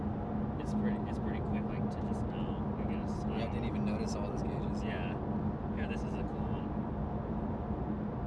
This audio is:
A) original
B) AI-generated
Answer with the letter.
A